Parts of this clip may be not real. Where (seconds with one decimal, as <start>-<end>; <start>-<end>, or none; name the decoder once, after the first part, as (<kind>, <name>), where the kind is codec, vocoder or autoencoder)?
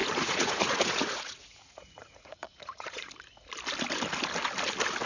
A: 0.0-3.1 (vocoder, Vocos)